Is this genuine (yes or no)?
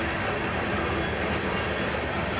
yes